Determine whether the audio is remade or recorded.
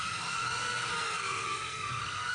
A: remade